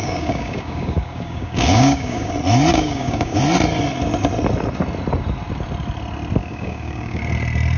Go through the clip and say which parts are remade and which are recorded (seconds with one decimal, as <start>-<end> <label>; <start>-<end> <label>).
0.0-2.3 remade; 2.3-2.7 recorded; 2.7-3.4 remade; 3.4-6.4 recorded; 6.4-7.2 remade; 7.2-7.8 recorded